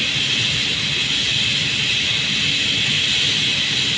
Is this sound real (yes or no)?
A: yes